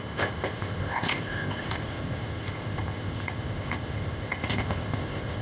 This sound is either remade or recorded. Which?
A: remade